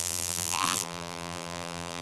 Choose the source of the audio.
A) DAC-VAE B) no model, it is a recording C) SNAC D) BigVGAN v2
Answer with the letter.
D